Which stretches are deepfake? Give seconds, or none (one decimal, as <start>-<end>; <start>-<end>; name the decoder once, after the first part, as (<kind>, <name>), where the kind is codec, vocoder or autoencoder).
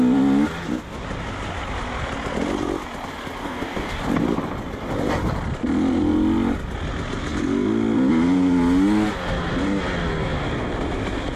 3.4-4.0 (codec, DAC)